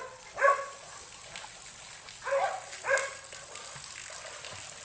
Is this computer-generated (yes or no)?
no